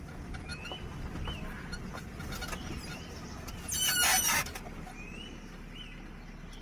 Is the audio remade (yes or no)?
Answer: no